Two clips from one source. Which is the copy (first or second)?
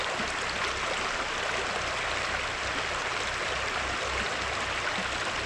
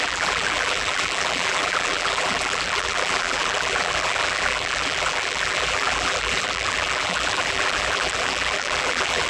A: second